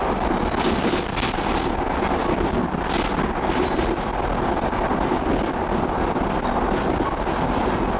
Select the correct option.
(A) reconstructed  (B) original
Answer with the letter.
B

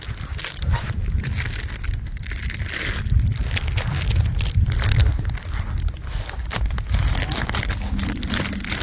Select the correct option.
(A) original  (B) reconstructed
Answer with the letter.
A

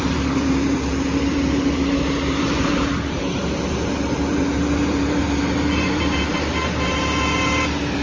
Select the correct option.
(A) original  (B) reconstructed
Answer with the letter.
B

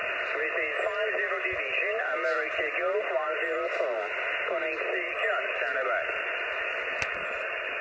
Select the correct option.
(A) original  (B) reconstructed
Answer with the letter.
A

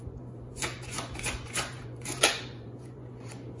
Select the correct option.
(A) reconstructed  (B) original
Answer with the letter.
A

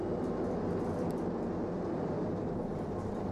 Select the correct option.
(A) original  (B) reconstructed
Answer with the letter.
A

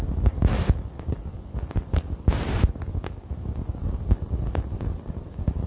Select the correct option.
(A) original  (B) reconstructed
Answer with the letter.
A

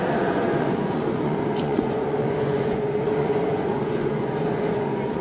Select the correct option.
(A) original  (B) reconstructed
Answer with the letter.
B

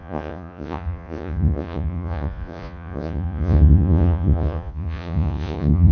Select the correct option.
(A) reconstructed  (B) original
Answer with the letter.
A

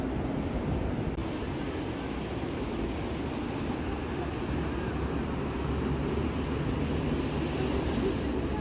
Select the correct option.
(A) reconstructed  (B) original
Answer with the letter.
B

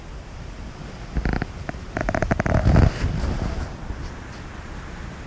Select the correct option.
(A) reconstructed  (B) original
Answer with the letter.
B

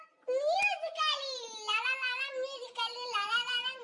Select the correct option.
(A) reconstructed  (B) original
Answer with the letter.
B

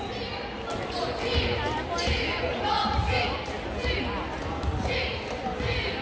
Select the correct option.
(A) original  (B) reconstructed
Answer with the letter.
A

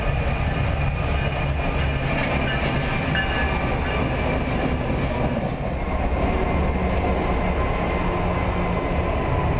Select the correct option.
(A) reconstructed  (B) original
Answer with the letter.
B